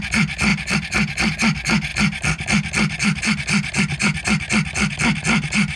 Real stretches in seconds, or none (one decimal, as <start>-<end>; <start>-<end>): 0.0-0.5; 1.3-5.8